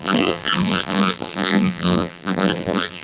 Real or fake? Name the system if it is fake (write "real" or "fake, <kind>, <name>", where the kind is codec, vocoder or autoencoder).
fake, vocoder, BigVGAN v2